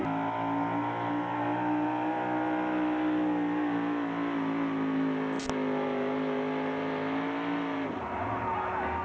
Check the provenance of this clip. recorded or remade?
recorded